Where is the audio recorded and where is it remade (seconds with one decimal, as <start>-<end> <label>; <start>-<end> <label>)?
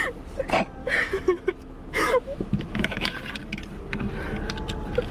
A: 0.0-0.8 recorded; 0.8-3.1 remade; 3.1-5.1 recorded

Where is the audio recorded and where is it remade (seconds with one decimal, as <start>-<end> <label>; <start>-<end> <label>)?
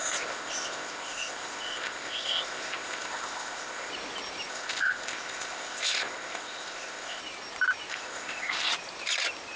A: 0.0-3.9 remade; 3.9-4.5 recorded; 4.5-7.2 remade; 7.2-7.9 recorded; 7.9-8.7 remade; 8.7-9.6 recorded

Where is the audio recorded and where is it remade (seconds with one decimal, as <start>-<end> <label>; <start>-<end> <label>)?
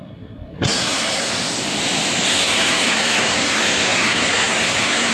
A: 0.0-1.3 remade; 1.3-2.3 recorded; 2.3-5.1 remade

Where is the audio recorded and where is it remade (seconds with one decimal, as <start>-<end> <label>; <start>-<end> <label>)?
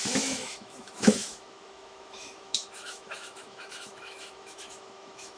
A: 0.0-5.4 remade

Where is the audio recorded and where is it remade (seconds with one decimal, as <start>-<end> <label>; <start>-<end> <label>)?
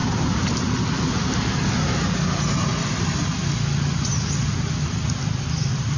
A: 0.0-6.0 recorded